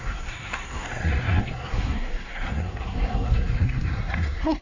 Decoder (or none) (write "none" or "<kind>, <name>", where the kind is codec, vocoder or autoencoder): codec, SNAC